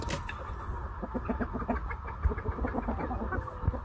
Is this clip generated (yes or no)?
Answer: no